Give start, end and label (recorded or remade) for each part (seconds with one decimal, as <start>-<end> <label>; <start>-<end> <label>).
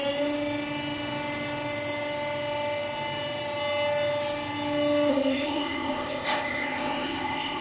0.0-5.1 recorded; 5.1-7.6 remade